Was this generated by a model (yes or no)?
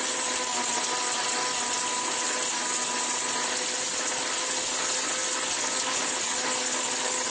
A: no